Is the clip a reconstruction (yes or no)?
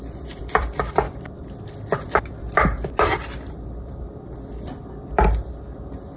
yes